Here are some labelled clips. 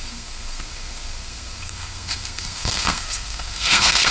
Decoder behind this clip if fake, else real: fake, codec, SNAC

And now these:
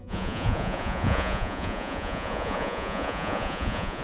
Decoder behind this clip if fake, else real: fake, vocoder, Vocos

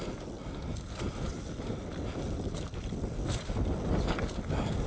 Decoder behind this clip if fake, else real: real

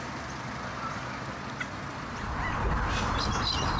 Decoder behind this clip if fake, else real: real